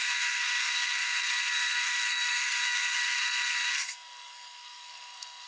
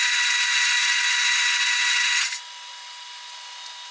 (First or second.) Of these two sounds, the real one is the second